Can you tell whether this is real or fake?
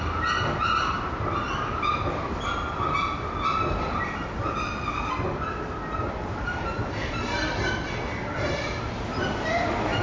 real